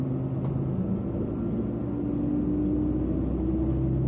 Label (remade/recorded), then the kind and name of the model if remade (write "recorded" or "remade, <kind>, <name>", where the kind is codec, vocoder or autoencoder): recorded